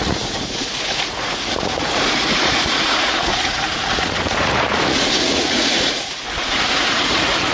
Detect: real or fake fake